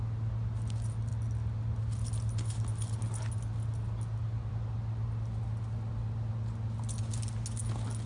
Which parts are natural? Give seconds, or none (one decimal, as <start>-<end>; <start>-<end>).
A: 0.0-8.1